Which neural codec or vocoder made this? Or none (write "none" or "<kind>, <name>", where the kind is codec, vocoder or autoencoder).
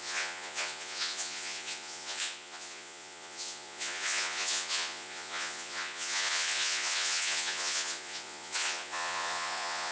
vocoder, Vocos